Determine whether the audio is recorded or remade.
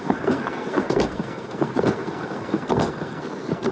remade